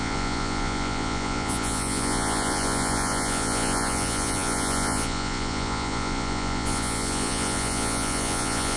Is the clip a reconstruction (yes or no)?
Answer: yes